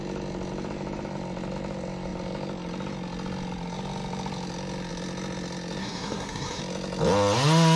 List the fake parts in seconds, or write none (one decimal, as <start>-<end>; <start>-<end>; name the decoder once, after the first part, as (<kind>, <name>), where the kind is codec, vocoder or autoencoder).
5.8-6.6 (codec, SNAC)